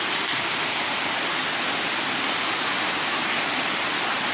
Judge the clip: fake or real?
real